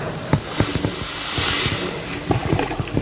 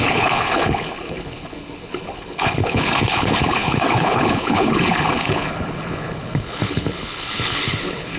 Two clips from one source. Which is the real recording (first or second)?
first